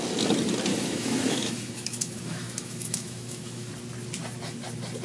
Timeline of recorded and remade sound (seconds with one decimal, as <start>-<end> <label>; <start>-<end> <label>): 0.0-0.7 recorded; 0.7-3.7 remade; 3.7-5.0 recorded